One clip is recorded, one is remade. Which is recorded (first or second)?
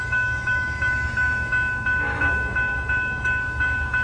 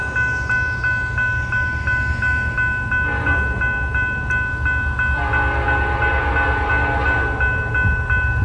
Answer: second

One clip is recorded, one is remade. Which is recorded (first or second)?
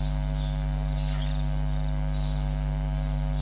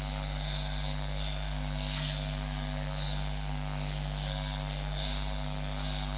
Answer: first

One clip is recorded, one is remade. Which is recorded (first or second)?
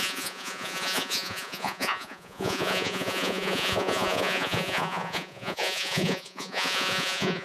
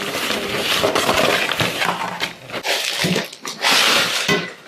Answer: second